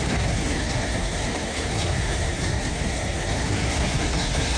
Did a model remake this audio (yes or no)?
yes